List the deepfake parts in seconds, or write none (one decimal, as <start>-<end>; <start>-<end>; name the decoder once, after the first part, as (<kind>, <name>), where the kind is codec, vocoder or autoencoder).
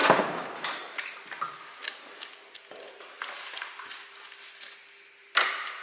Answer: none